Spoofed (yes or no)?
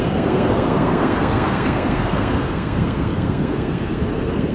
yes